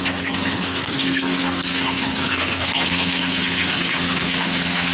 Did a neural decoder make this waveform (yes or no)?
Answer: yes